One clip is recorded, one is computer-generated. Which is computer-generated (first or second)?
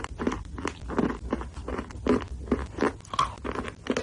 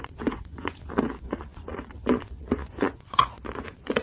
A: second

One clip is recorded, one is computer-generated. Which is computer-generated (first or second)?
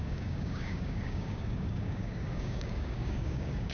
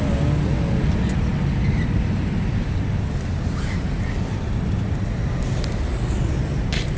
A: first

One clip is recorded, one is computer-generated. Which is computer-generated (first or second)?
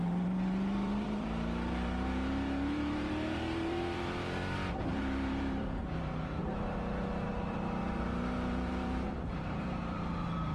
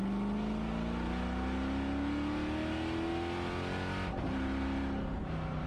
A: first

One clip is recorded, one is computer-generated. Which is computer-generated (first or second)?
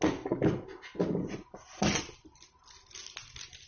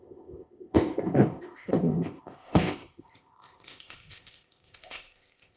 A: second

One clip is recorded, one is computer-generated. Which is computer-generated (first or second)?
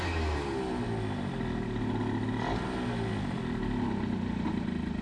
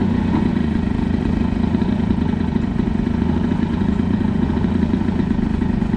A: second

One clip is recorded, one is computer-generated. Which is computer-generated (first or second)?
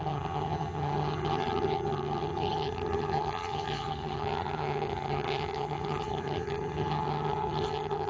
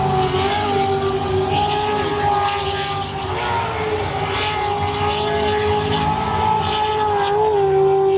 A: first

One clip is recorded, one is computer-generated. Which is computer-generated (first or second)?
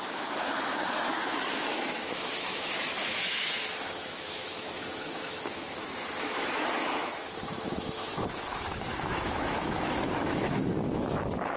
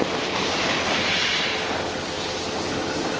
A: first